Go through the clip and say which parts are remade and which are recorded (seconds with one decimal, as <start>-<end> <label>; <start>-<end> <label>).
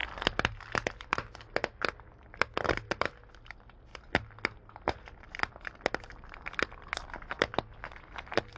0.0-8.6 recorded